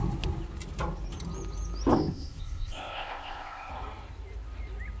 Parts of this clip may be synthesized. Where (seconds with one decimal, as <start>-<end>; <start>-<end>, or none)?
1.9-3.7